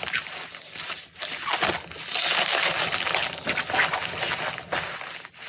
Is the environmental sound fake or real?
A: real